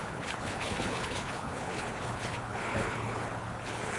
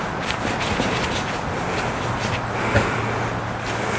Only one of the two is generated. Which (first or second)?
first